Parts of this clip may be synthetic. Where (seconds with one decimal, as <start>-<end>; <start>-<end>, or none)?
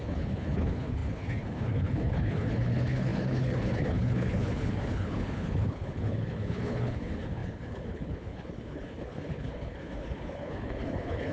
0.0-11.3